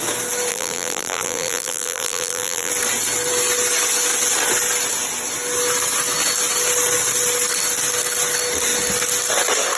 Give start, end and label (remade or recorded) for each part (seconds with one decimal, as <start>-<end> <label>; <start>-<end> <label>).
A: 0.0-0.5 recorded; 0.5-2.7 remade; 2.7-9.8 recorded